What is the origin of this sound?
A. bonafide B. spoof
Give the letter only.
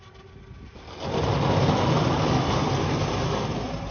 A